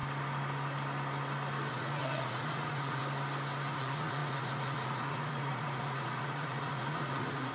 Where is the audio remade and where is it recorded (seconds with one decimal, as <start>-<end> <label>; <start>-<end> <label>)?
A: 0.0-1.7 recorded; 1.7-3.0 remade; 3.0-3.7 recorded; 3.7-7.5 remade